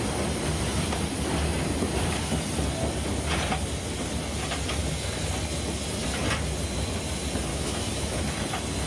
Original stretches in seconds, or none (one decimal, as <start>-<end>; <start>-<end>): 0.0-7.5; 8.2-8.9